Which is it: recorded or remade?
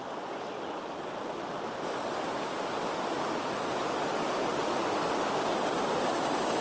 recorded